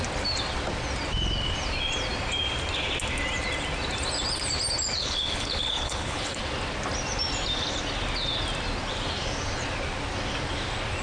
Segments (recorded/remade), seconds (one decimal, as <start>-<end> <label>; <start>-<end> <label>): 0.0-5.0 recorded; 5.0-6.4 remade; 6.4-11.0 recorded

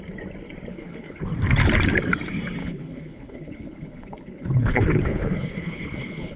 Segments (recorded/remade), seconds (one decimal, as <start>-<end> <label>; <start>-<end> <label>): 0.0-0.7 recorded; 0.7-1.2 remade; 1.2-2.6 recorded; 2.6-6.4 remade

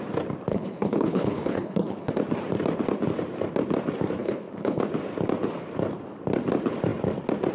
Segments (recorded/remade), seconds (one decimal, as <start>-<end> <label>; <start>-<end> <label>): 0.0-0.5 recorded; 0.5-2.1 remade; 2.1-4.2 recorded; 4.2-4.8 remade; 4.8-7.5 recorded